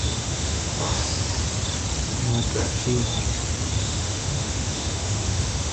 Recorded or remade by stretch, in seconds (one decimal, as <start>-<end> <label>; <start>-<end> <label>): 0.0-1.0 remade; 1.0-2.6 recorded; 2.6-3.1 remade; 3.1-3.8 recorded; 3.8-5.7 remade

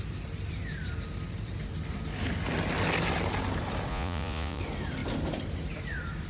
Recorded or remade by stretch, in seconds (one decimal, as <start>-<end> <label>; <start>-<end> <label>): 0.0-3.9 recorded; 3.9-4.6 remade; 4.6-6.3 recorded

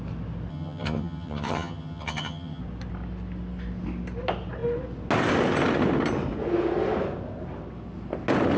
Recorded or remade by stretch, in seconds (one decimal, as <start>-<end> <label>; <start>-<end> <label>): 0.0-0.5 recorded; 0.5-2.6 remade; 2.6-8.6 recorded

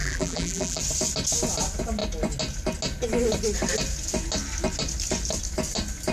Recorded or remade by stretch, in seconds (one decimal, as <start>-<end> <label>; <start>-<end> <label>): 0.0-0.8 remade; 0.8-6.1 recorded

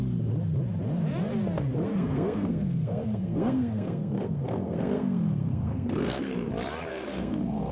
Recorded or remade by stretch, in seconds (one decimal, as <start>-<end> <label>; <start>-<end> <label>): 0.0-1.9 recorded; 1.9-6.5 remade; 6.5-6.9 recorded; 6.9-7.7 remade